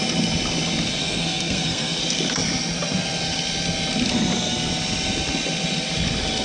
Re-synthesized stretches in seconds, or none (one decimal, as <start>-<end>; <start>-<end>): 1.0-2.0

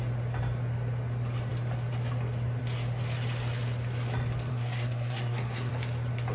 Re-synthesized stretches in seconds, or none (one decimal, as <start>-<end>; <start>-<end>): 4.5-5.7

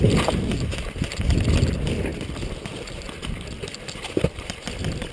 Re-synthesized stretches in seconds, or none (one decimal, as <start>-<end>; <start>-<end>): none

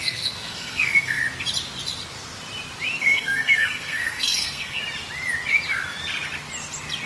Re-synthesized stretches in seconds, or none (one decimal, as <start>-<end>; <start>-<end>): 0.0-1.2; 3.0-4.8

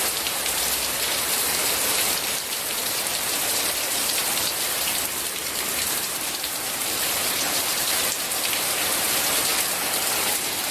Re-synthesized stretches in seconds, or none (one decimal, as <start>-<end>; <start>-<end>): 0.0-9.5; 10.2-10.7

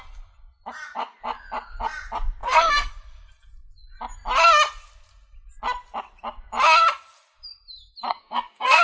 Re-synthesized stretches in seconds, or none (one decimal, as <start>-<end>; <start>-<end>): 2.4-2.9; 8.1-8.8